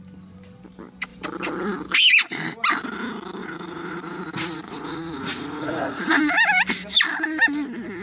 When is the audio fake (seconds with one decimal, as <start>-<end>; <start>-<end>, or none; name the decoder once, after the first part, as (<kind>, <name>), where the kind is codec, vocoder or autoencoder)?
3.4-6.2 (vocoder, Vocos)